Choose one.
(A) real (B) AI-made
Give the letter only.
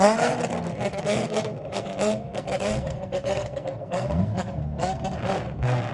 B